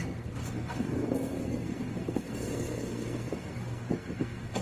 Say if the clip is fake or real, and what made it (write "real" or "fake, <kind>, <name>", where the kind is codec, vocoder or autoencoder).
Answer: fake, codec, SNAC